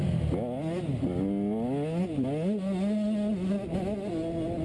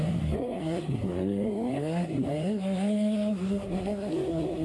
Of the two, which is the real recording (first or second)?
first